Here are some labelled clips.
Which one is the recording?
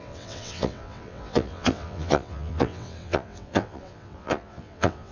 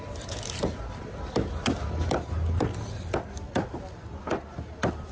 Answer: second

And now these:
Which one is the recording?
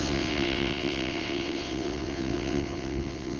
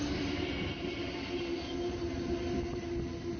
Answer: second